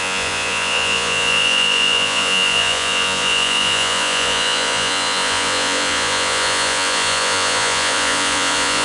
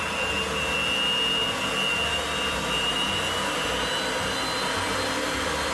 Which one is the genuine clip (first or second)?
second